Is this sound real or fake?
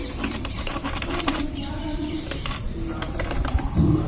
fake